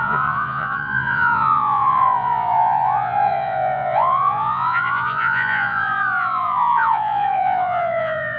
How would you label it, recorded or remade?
remade